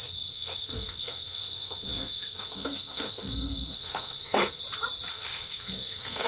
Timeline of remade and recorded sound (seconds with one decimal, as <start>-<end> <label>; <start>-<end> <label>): 0.0-4.6 remade; 4.6-5.1 recorded; 5.1-6.3 remade